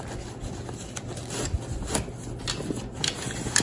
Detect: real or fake real